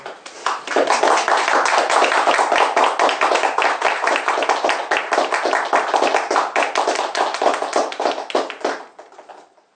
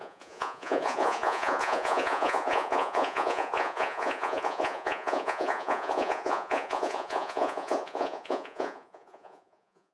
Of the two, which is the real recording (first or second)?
first